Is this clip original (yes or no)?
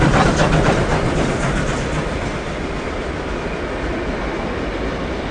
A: yes